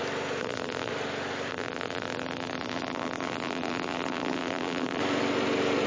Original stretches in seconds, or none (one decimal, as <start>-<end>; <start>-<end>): 0.0-0.4; 0.9-1.5; 5.0-5.9